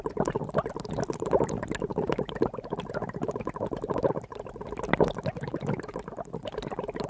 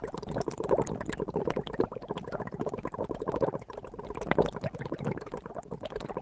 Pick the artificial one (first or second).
second